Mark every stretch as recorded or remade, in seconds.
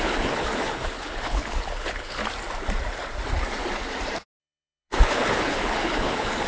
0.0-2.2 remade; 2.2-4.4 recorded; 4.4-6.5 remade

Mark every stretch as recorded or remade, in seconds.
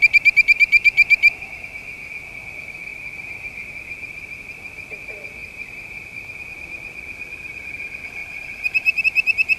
0.0-5.4 recorded; 5.4-6.4 remade; 6.4-8.2 recorded; 8.2-9.0 remade; 9.0-9.6 recorded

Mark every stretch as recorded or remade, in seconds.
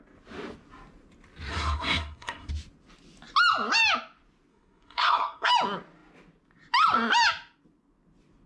0.0-1.5 recorded; 1.5-2.5 remade; 2.5-4.5 recorded; 4.5-5.5 remade; 5.5-8.5 recorded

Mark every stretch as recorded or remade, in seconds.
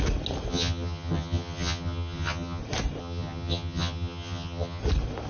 0.0-0.5 recorded; 0.5-2.6 remade; 2.6-3.0 recorded; 3.0-4.8 remade; 4.8-5.3 recorded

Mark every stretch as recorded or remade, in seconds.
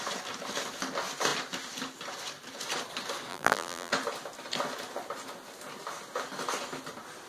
0.0-3.3 recorded; 3.3-3.9 remade; 3.9-7.3 recorded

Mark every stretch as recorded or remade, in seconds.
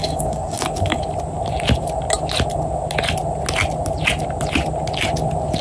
0.0-1.0 remade; 1.0-5.6 recorded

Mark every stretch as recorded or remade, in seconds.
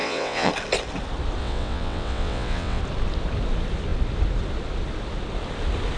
0.0-0.5 remade; 0.5-1.4 recorded; 1.4-2.8 remade; 2.8-6.0 recorded